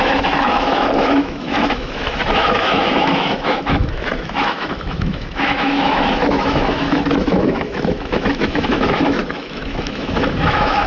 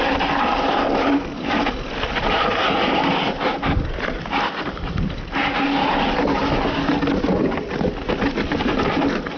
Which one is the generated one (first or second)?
first